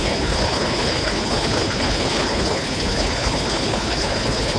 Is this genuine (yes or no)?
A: no